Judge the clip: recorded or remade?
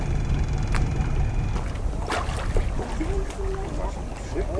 recorded